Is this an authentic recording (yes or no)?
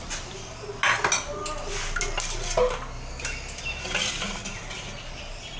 yes